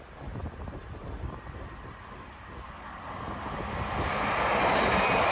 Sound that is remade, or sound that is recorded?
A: recorded